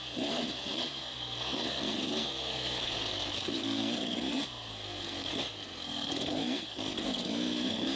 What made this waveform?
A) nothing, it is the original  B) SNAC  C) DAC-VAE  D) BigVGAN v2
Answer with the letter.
B